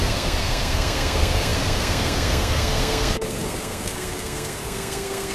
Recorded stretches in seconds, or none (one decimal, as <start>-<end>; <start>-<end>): none